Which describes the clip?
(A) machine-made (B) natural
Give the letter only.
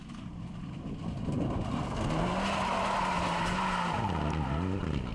B